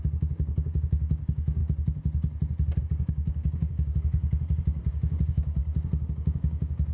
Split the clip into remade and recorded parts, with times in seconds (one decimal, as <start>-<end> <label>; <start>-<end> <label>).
0.0-1.6 remade; 1.6-2.8 recorded; 2.8-4.2 remade; 4.2-4.9 recorded; 4.9-5.6 remade; 5.6-6.1 recorded; 6.1-6.9 remade